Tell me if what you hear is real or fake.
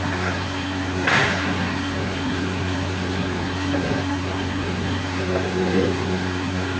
fake